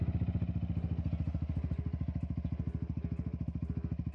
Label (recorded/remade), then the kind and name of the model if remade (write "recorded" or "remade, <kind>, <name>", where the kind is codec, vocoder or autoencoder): recorded